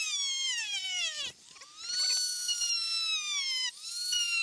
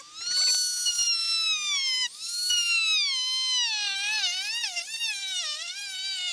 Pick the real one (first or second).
second